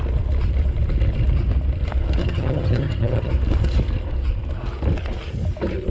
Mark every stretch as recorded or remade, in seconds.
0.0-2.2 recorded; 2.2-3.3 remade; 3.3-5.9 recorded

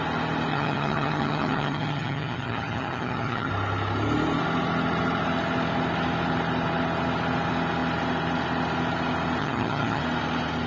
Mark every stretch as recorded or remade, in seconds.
0.0-0.5 recorded; 0.5-3.5 remade; 3.5-9.4 recorded; 9.4-10.0 remade; 10.0-10.7 recorded